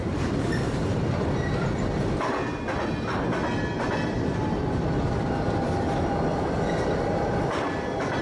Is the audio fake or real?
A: real